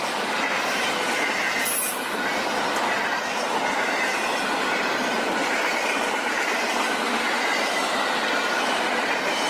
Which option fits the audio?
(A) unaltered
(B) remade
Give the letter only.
A